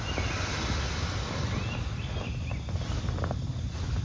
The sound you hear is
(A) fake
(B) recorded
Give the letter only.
B